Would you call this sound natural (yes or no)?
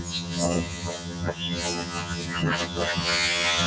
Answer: no